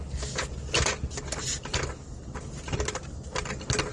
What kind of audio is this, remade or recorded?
recorded